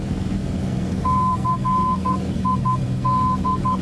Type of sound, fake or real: fake